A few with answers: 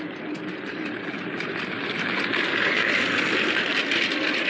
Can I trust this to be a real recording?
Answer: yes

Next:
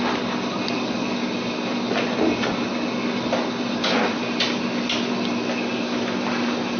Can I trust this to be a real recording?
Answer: yes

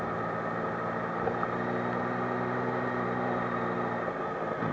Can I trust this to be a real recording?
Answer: yes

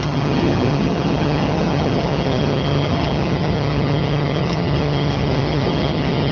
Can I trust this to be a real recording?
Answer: no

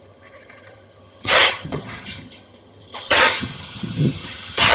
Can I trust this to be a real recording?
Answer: no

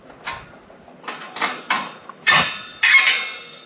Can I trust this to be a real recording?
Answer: yes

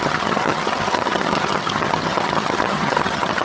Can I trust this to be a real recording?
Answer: no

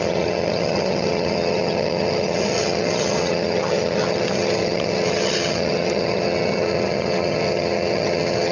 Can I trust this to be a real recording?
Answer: no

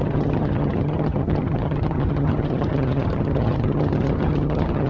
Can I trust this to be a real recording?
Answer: no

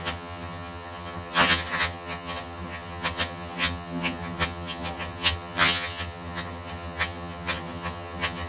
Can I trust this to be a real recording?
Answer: no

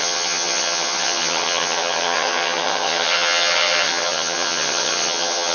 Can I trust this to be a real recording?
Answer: no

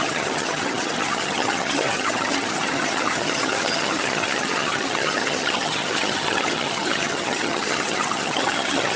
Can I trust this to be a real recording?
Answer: no